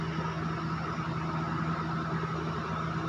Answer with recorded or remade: recorded